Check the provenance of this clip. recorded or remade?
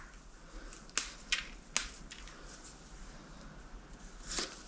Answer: recorded